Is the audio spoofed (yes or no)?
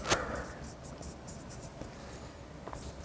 no